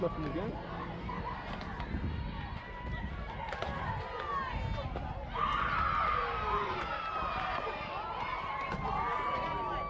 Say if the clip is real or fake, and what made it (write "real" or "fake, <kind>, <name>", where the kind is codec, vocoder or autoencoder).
real